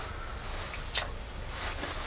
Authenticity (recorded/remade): recorded